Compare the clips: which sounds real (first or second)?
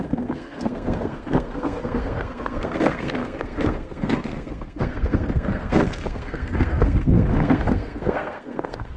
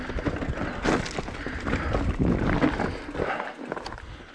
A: second